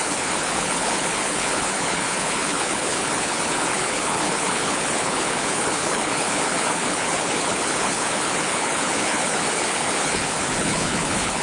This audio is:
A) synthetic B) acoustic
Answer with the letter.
A